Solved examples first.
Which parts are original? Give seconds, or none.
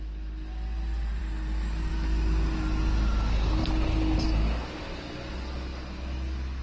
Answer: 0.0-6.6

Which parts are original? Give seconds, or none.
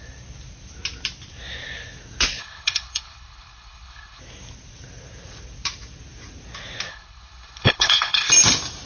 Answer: 0.0-2.4; 4.2-6.9; 8.3-8.9